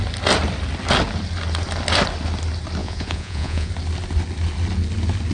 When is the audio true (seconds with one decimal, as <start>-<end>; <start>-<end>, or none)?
0.0-2.8; 3.7-5.3